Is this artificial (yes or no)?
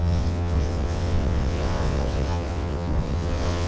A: yes